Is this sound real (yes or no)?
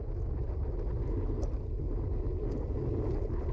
yes